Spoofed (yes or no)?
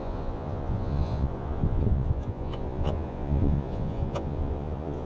yes